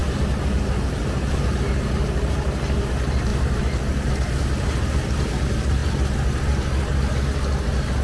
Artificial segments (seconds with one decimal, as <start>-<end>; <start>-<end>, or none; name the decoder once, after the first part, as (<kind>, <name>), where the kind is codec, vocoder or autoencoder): 0.0-2.8 (vocoder, BigVGAN v2)